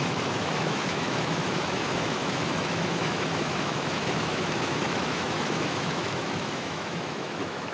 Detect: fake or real fake